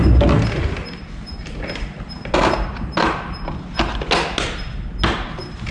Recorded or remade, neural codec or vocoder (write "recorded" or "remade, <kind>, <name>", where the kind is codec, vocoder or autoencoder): recorded